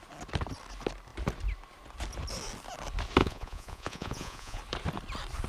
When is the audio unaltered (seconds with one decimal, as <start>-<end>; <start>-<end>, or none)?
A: 0.0-3.2; 4.6-5.5